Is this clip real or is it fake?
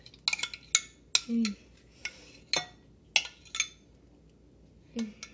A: real